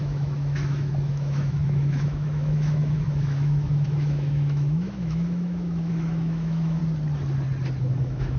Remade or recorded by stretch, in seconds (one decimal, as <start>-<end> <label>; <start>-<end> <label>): 0.0-6.8 remade; 6.8-7.8 recorded; 7.8-8.4 remade